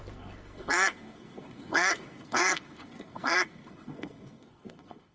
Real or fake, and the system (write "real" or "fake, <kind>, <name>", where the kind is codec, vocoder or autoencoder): fake, codec, SNAC